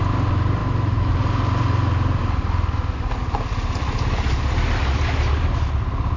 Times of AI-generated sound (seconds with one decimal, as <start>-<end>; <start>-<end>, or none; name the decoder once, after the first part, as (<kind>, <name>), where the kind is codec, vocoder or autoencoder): 0.6-1.2 (autoencoder, DAC-VAE)